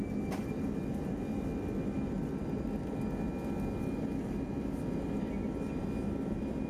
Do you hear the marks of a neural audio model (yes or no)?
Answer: no